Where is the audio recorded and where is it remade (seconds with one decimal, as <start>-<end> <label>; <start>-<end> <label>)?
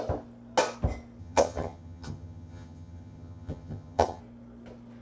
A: 0.0-1.2 recorded; 1.2-4.2 remade; 4.2-5.0 recorded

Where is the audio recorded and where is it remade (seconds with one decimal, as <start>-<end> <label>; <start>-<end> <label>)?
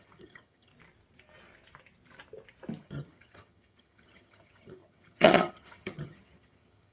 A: 0.0-0.7 remade; 0.7-2.8 recorded; 2.8-6.9 remade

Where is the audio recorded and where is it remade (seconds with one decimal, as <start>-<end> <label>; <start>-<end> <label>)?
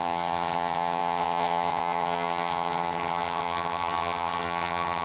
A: 0.0-5.0 remade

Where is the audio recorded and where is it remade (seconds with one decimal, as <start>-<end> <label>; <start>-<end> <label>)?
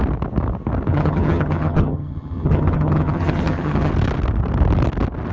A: 0.0-0.9 recorded; 0.9-3.9 remade; 3.9-5.3 recorded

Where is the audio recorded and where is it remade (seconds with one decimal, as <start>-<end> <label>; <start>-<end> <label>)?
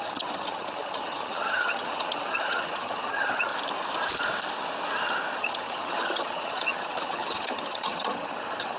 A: 0.0-3.5 remade; 3.5-5.4 recorded; 5.4-8.8 remade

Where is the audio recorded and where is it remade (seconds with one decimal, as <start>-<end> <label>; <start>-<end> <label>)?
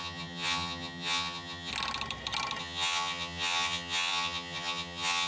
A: 0.0-1.7 remade; 1.7-2.6 recorded; 2.6-5.3 remade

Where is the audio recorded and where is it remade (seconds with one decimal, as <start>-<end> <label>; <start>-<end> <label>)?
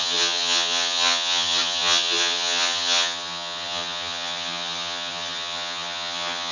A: 0.0-6.5 remade